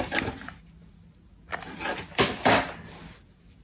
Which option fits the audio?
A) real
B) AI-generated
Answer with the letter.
A